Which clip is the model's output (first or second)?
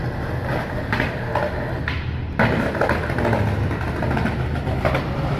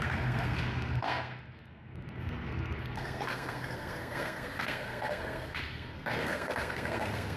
second